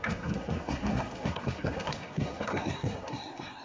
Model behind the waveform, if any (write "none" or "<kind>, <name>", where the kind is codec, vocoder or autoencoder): codec, SNAC